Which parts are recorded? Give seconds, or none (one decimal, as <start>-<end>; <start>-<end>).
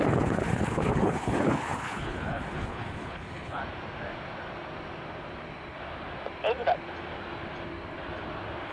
3.6-8.7